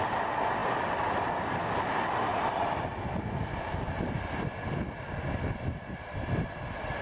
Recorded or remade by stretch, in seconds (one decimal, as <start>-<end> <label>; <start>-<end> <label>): 0.0-7.0 recorded